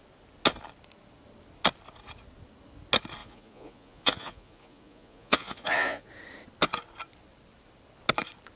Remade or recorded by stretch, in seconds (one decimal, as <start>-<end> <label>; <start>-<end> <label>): 0.0-3.2 recorded; 3.2-6.1 remade; 6.1-8.6 recorded